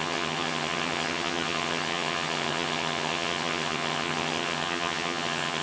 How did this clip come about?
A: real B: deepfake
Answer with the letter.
B